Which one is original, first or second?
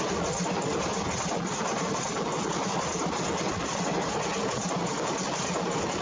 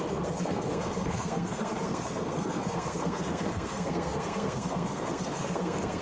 first